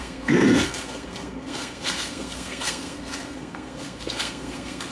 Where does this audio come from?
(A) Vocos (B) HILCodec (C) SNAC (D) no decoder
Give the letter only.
C